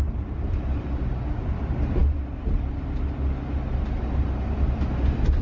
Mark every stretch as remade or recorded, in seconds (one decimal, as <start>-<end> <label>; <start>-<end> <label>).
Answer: 0.0-5.4 recorded